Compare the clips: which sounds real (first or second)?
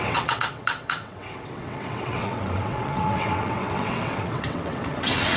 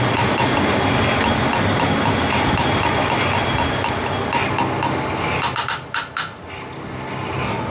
second